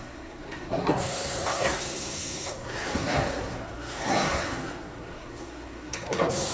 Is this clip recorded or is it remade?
remade